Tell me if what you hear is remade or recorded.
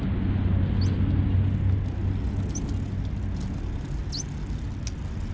recorded